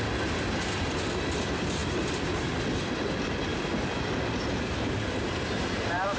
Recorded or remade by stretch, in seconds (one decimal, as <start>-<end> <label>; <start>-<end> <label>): 0.0-6.2 recorded